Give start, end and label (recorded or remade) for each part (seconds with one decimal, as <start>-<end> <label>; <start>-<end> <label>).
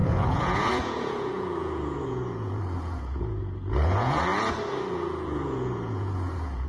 0.0-4.3 remade; 4.3-4.9 recorded; 4.9-6.7 remade